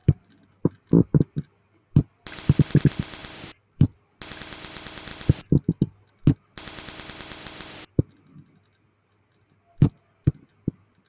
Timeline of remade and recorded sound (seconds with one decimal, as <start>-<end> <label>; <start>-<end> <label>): 0.0-1.8 remade; 1.8-3.2 recorded; 3.2-4.0 remade; 4.0-5.1 recorded; 5.1-6.1 remade; 6.1-11.1 recorded